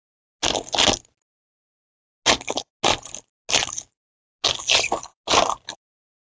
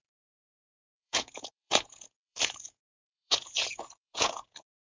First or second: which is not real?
second